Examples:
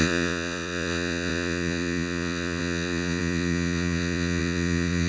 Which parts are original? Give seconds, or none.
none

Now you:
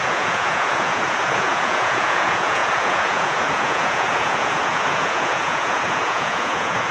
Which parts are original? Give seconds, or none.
none

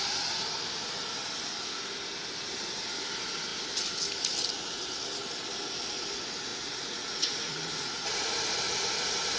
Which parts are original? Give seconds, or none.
0.0-6.5; 8.3-9.4

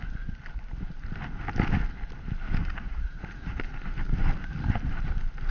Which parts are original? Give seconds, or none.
0.0-2.6; 3.6-5.5

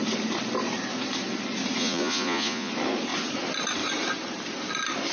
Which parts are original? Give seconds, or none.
0.0-1.8; 2.7-5.1